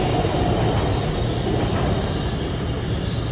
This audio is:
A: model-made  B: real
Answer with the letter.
B